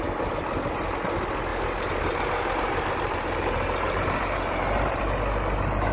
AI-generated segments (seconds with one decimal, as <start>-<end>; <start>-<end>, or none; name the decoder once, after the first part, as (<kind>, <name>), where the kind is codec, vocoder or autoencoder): 1.5-5.0 (vocoder, BigVGAN v2)